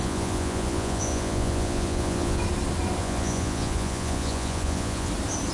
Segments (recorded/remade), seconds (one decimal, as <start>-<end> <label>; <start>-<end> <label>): 0.0-2.4 remade; 2.4-3.0 recorded; 3.0-5.1 remade; 5.1-5.5 recorded